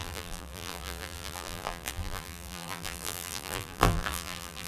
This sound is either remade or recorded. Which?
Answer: remade